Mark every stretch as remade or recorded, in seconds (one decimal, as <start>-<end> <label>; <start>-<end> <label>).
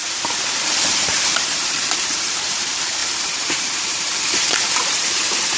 0.0-5.6 remade